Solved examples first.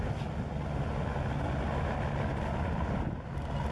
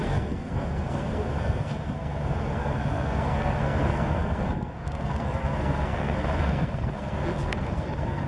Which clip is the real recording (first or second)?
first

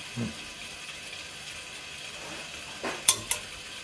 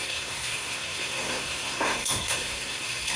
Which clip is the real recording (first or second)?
first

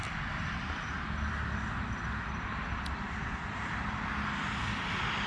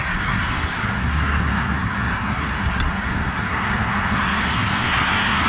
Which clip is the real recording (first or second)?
first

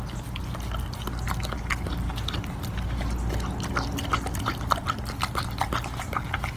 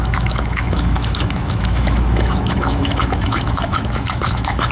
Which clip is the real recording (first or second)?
first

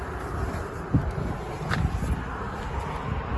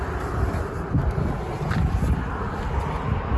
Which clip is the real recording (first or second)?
first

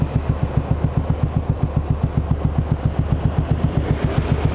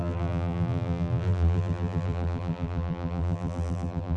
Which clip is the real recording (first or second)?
first